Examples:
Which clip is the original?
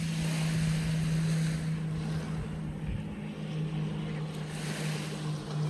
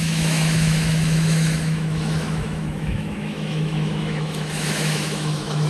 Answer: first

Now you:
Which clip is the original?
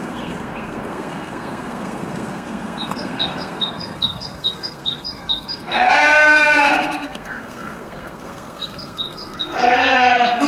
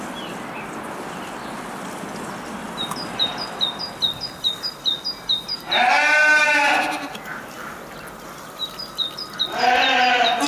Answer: second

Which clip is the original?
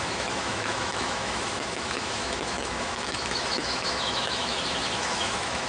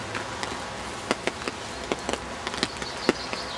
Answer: second